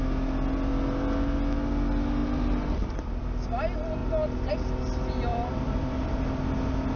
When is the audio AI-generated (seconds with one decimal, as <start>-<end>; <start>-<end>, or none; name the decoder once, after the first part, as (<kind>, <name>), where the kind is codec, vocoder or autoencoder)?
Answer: 2.2-2.9 (vocoder, BigVGAN v2); 5.3-6.1